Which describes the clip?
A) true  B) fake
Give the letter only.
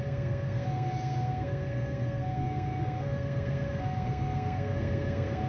B